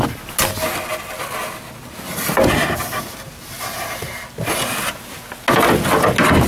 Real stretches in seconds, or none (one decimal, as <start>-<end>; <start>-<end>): 0.0-6.5